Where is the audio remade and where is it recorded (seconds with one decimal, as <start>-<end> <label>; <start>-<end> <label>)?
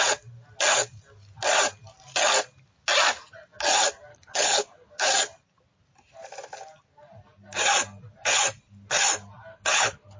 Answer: 0.0-4.1 recorded; 4.1-4.9 remade; 4.9-9.5 recorded; 9.5-10.2 remade